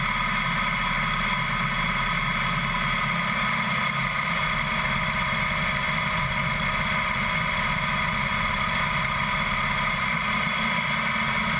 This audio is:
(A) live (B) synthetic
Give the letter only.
A